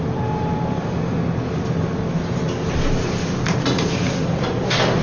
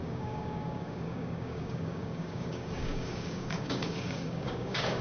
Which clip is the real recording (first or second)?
first